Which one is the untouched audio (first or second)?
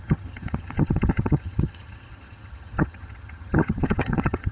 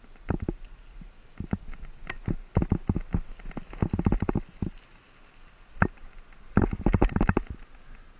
second